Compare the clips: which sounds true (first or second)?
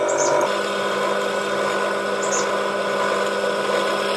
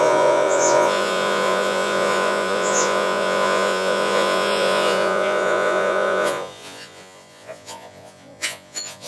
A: first